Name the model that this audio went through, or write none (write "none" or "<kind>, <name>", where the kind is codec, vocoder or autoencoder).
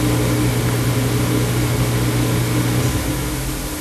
none